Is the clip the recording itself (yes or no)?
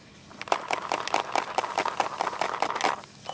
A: yes